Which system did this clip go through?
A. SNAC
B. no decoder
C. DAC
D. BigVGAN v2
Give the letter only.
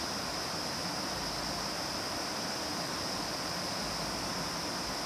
B